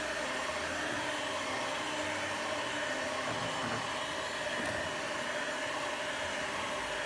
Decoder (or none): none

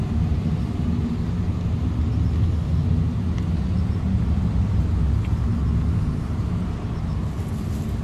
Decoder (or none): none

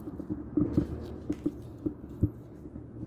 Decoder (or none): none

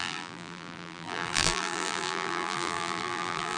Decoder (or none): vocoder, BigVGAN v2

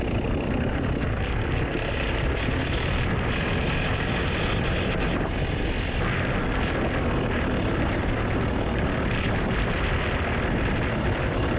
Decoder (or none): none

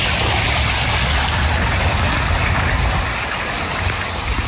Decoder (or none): none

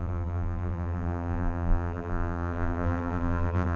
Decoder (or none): vocoder, BigVGAN v2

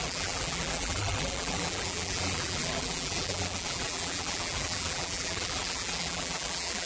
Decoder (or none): vocoder, BigVGAN v2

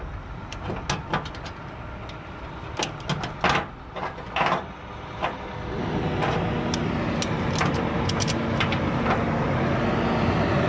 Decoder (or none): none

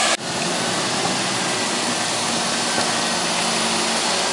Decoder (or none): none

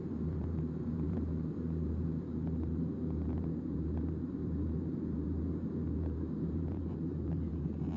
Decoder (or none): vocoder, BigVGAN v2